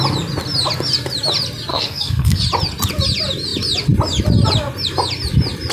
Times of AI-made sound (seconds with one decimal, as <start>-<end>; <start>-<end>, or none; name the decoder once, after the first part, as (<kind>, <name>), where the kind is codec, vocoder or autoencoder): 1.7-2.4 (codec, SNAC)